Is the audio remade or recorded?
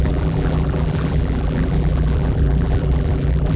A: remade